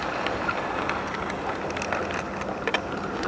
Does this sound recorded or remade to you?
recorded